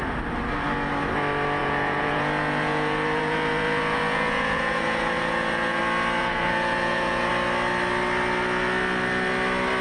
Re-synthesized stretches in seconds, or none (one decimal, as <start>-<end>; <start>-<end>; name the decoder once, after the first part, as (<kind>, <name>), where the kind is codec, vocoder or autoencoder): 1.6-5.8 (vocoder, Vocos); 6.2-7.3